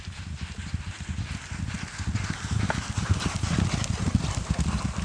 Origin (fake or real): real